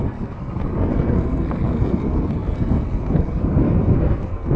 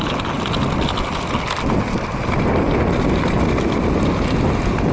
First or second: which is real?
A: second